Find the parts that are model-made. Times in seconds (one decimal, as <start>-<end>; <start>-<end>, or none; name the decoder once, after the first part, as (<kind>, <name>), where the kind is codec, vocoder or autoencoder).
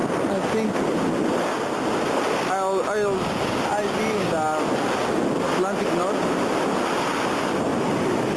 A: 7.7-8.4 (vocoder, BigVGAN v2)